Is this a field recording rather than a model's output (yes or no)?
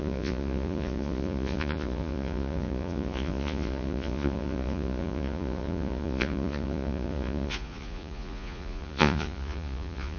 no